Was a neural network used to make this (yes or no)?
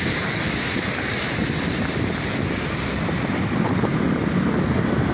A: no